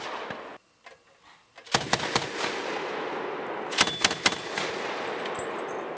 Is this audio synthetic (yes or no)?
no